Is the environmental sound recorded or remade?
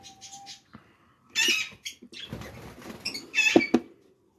recorded